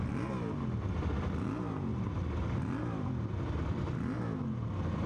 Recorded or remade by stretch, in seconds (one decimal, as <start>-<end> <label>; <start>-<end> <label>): 0.0-5.1 recorded